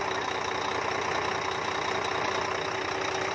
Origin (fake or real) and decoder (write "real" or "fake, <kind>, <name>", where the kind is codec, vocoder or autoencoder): real